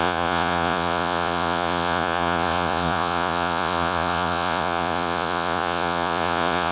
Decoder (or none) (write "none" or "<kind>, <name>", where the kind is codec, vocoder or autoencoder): vocoder, Vocos